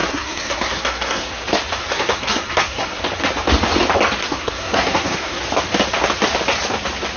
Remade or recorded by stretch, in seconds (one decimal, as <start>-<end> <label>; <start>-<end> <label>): 0.0-1.3 remade; 1.3-1.8 recorded; 1.8-3.0 remade; 3.0-4.2 recorded; 4.2-5.4 remade; 5.4-7.2 recorded